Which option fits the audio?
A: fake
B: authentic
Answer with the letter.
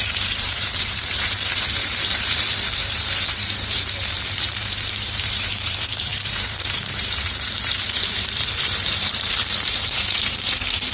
A